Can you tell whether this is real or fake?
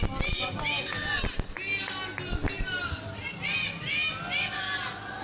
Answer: real